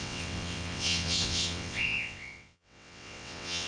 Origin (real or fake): fake